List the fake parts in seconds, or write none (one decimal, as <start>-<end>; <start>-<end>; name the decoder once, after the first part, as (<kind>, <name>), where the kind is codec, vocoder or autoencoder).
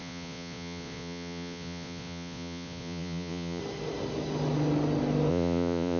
0.0-3.6 (vocoder, Vocos); 5.3-6.0